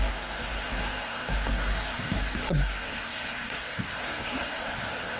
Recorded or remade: remade